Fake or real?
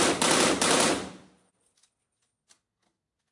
real